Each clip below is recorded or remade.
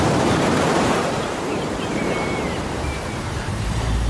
remade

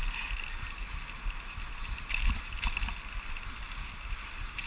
recorded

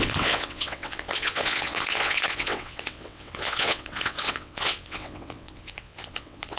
remade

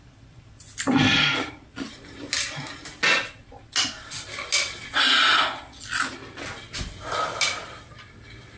recorded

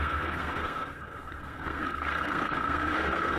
remade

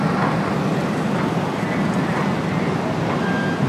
recorded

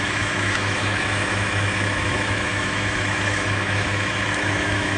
remade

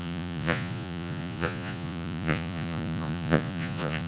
remade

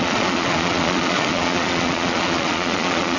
remade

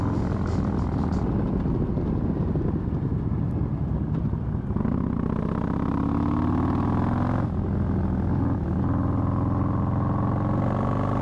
recorded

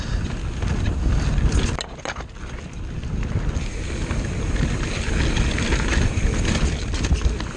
recorded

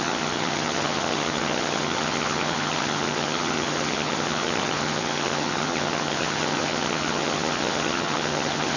remade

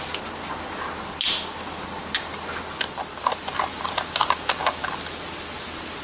recorded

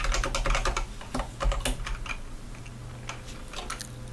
recorded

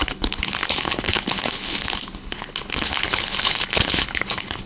remade